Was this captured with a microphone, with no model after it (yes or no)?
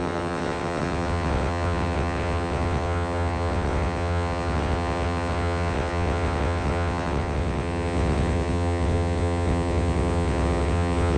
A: no